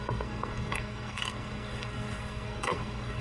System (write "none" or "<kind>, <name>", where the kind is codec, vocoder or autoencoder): codec, SNAC